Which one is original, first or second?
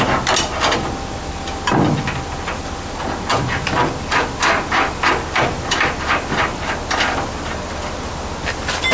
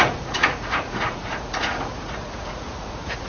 first